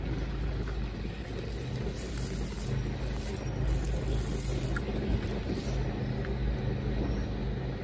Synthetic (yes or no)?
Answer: no